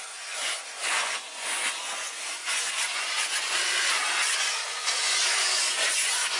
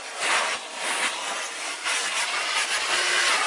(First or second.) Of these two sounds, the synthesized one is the first